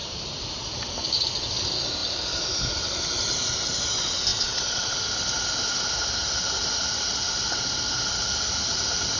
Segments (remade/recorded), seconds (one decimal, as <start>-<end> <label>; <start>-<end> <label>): 0.0-0.7 remade; 0.7-9.2 recorded